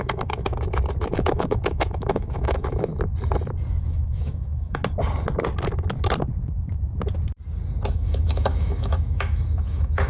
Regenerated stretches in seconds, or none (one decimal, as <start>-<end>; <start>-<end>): 0.0-0.5; 1.1-2.9; 3.7-4.8; 7.9-10.1